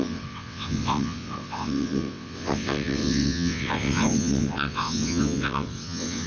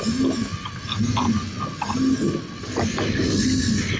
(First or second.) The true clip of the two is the second